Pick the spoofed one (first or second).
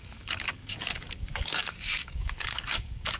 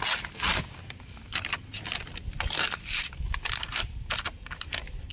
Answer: first